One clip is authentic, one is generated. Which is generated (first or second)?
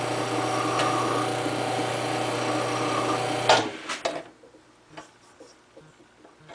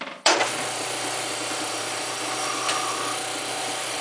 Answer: second